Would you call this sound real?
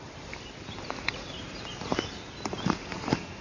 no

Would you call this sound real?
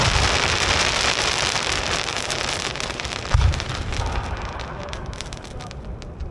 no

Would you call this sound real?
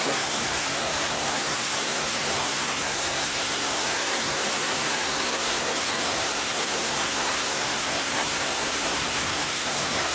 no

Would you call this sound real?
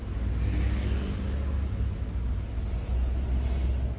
yes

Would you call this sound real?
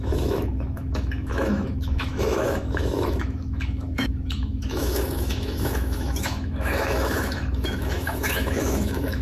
no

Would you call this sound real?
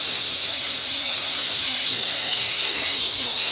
no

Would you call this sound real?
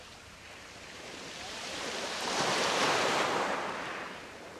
no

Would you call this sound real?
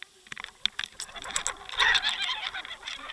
yes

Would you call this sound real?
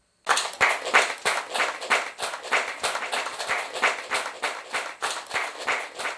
yes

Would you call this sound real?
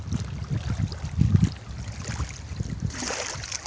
yes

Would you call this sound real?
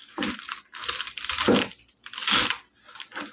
yes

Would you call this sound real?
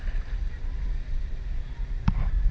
yes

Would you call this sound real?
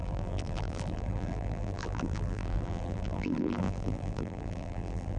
no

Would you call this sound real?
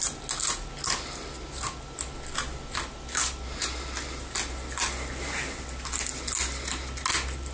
yes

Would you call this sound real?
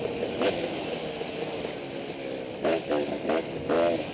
yes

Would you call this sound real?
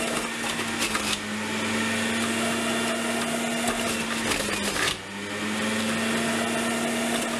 yes